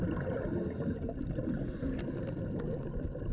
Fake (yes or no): no